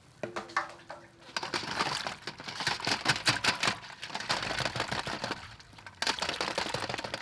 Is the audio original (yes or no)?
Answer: yes